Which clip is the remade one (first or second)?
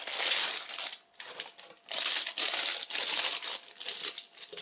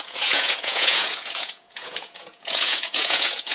second